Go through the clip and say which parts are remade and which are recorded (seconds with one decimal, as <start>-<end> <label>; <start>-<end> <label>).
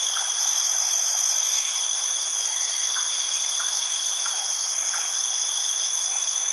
0.0-6.5 remade